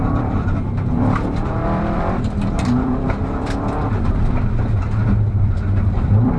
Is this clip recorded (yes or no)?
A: no